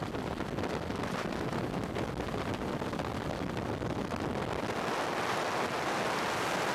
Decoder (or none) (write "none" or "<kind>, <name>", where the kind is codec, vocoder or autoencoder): none